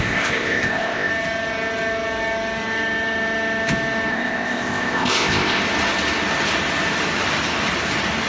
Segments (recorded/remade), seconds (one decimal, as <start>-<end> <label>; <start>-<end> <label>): 0.0-1.1 remade; 1.1-4.1 recorded; 4.1-5.6 remade; 5.6-8.3 recorded